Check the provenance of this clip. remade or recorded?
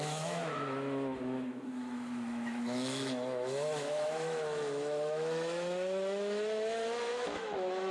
remade